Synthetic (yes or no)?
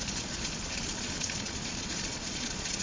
yes